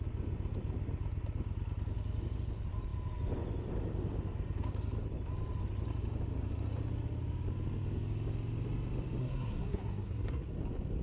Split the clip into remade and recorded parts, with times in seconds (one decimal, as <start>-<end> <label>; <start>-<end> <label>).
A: 0.0-9.2 recorded; 9.2-10.4 remade; 10.4-11.0 recorded